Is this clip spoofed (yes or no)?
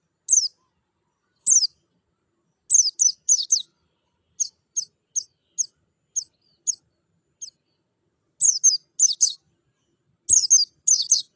no